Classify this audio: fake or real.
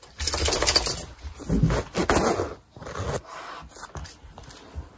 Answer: real